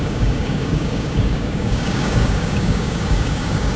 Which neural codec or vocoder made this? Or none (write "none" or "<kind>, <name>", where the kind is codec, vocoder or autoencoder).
codec, DAC